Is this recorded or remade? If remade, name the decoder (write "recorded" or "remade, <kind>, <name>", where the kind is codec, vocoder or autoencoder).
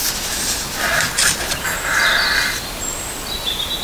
recorded